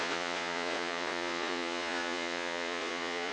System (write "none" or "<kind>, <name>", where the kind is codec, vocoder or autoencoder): vocoder, Vocos